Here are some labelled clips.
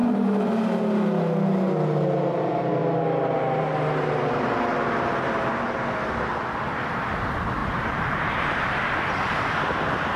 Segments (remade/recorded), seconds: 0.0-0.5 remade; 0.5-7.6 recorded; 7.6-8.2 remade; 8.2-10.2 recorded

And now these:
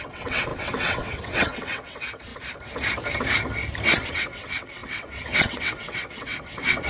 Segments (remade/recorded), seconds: 0.0-2.3 remade; 2.3-4.1 recorded; 4.1-6.9 remade